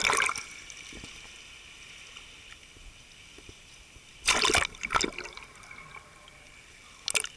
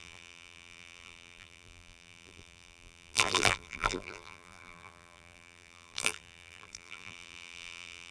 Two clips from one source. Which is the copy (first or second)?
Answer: second